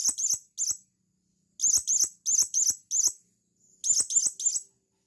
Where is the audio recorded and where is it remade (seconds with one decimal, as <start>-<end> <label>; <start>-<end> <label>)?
0.0-5.1 recorded